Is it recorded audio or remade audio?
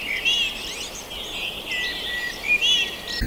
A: recorded